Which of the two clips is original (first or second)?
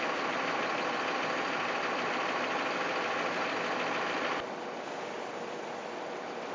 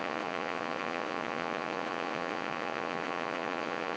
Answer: first